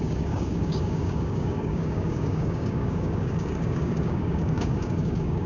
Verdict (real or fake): fake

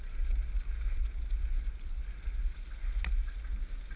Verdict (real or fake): real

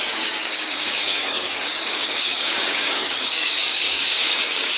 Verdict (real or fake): fake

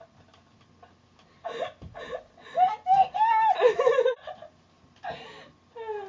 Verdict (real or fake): real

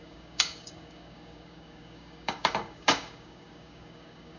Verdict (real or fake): fake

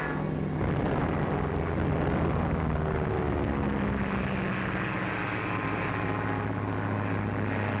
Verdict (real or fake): real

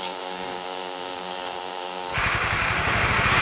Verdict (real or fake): fake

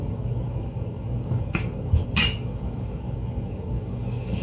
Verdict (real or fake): fake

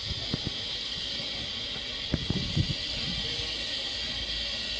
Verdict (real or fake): real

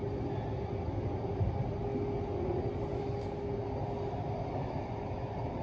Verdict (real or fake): real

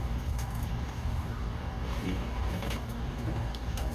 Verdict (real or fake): fake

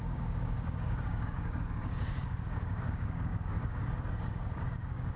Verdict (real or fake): fake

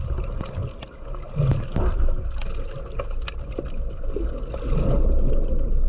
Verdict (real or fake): real